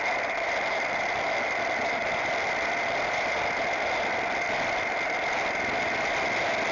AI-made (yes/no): no